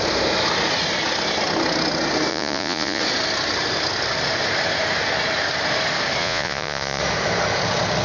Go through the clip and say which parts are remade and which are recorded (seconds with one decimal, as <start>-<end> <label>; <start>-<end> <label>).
0.0-2.3 recorded; 2.3-3.0 remade; 3.0-6.2 recorded; 6.2-7.0 remade; 7.0-8.0 recorded